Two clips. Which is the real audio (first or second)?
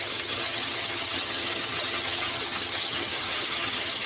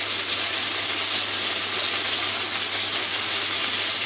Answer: second